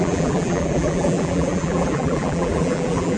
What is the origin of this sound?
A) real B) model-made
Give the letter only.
B